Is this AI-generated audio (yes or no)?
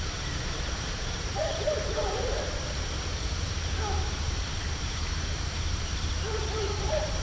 yes